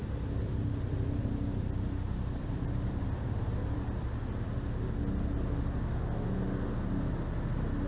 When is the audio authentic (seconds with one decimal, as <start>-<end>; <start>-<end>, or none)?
4.2-7.9